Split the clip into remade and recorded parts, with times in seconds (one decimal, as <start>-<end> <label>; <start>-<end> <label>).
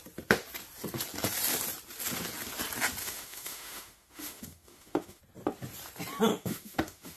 0.0-3.0 recorded; 3.0-5.2 remade; 5.2-6.3 recorded; 6.3-7.2 remade